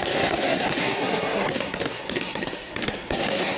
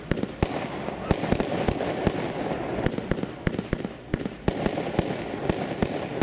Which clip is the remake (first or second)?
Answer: first